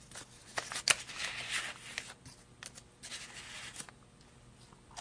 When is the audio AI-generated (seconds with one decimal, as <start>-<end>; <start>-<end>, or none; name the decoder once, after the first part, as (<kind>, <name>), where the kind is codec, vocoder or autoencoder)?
none